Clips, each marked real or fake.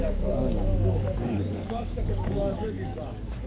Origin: fake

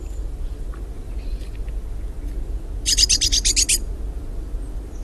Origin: real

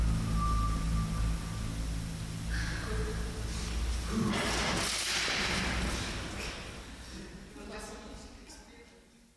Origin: real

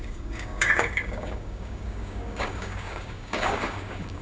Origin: fake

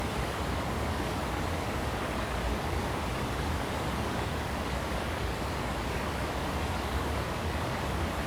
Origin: fake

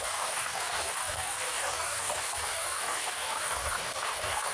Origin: fake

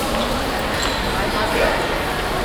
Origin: real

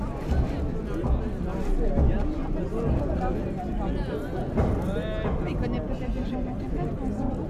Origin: real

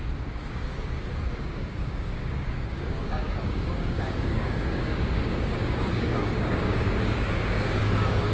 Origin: fake